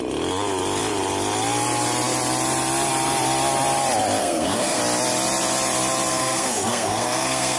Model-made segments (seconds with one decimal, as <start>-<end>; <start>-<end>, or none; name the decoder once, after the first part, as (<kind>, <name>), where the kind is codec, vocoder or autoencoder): 4.2-4.8 (codec, SNAC); 6.1-7.6